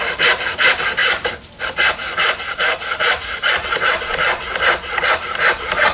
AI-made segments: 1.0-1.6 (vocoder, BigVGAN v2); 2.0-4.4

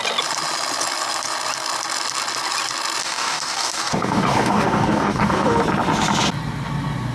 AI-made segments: 3.0-5.6 (codec, DAC)